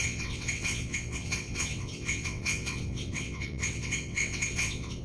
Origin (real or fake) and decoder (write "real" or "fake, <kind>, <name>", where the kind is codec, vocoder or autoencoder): fake, vocoder, WaveNeXt